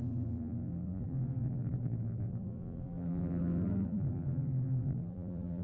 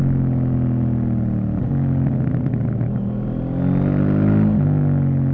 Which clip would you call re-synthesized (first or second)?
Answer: first